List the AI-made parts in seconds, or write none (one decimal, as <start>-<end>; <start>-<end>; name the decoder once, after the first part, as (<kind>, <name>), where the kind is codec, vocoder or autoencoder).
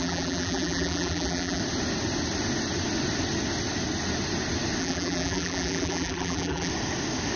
0.0-1.6 (vocoder, BigVGAN v2); 4.8-6.7